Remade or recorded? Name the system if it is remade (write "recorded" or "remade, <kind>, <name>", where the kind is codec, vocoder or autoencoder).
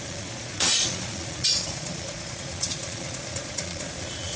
remade, vocoder, Vocos